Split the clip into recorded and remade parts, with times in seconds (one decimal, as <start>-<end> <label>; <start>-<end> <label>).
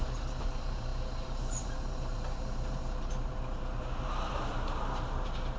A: 0.0-5.6 remade